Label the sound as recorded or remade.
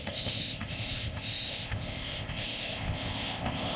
remade